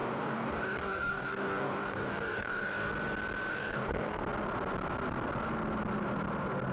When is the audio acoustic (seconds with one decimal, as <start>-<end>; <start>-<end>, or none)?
2.9-3.5; 4.2-6.7